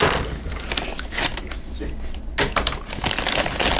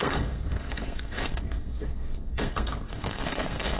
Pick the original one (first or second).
first